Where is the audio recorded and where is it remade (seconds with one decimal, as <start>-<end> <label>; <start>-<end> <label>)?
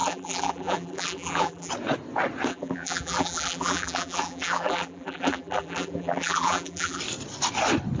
0.0-1.7 remade; 1.7-2.5 recorded; 2.5-7.0 remade; 7.0-8.0 recorded